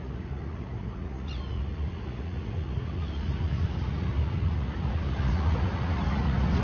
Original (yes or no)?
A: no